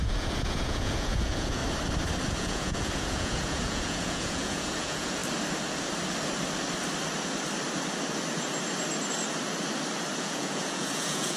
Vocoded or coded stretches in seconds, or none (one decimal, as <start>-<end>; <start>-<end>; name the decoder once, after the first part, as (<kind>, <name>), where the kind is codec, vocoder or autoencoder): 0.0-1.6 (vocoder, Vocos); 2.3-5.2; 10.2-11.4